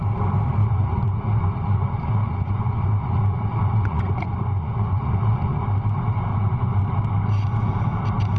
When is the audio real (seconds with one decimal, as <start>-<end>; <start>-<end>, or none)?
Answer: 0.0-0.6; 5.6-6.3; 6.8-8.4

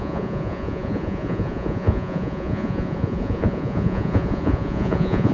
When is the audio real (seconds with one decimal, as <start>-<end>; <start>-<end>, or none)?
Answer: none

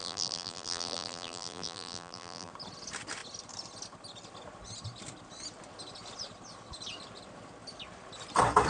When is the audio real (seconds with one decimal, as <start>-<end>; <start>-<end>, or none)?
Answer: 2.5-8.7

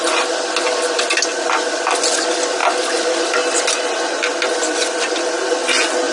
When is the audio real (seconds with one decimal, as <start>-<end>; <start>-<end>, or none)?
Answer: 0.0-6.1

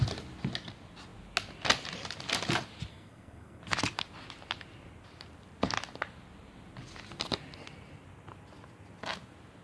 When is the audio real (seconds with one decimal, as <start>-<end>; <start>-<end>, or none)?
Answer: 0.0-2.9; 3.6-9.6

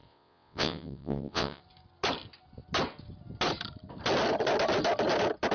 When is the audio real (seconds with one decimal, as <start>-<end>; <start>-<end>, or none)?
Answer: 1.6-5.5

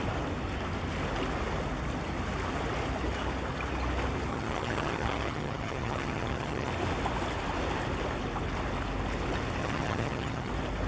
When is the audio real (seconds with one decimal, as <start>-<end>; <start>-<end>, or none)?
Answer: 0.0-4.3; 6.7-9.6; 10.5-10.9